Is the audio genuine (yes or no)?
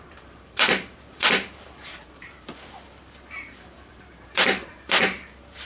no